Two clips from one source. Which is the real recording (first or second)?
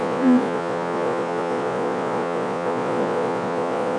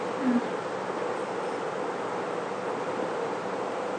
second